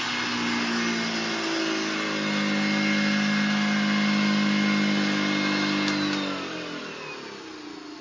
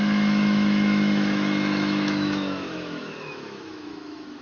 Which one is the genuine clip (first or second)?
first